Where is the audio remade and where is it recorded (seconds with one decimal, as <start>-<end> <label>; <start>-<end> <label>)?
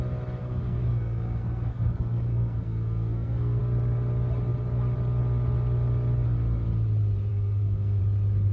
0.0-0.4 recorded; 0.4-3.6 remade; 3.6-7.3 recorded; 7.3-8.0 remade; 8.0-8.5 recorded